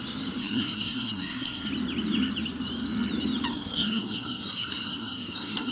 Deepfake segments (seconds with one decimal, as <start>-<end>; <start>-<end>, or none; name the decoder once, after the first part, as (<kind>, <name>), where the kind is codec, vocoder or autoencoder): 0.4-1.7 (codec, SNAC); 3.5-5.7